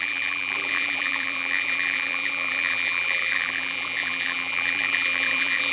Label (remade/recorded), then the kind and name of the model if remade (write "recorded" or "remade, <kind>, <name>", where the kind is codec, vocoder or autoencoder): remade, vocoder, BigVGAN v2